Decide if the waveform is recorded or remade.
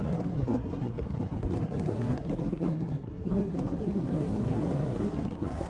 remade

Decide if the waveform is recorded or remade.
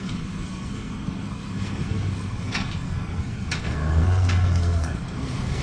remade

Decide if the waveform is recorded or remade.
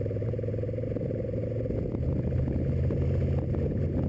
recorded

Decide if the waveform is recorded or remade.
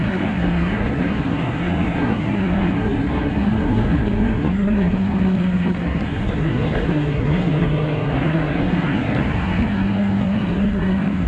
remade